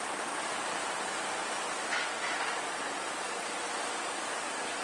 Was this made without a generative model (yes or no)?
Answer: yes